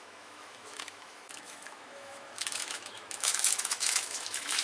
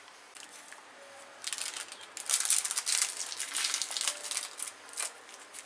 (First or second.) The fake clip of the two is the first